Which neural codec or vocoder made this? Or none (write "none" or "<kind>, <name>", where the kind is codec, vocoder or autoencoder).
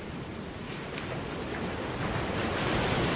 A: none